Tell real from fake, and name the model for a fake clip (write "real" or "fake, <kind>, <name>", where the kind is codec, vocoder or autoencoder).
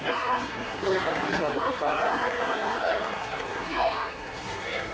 fake, codec, SNAC